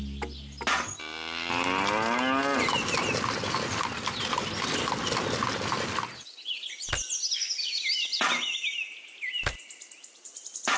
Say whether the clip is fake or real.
real